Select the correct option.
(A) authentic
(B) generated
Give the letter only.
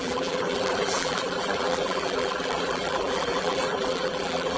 B